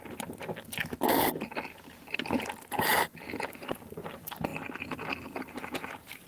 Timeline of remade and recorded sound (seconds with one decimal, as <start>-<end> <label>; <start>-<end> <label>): 0.0-1.9 recorded; 1.9-4.5 remade; 4.5-5.4 recorded; 5.4-6.3 remade